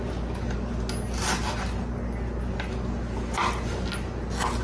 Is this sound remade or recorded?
recorded